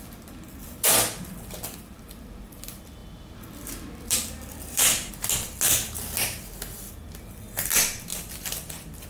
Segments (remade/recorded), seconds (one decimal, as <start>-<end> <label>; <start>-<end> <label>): 0.0-0.6 recorded; 0.6-2.4 remade; 2.4-3.0 recorded; 3.0-5.1 remade; 5.1-8.1 recorded; 8.1-9.1 remade